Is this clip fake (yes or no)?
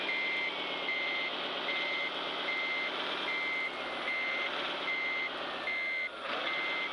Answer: no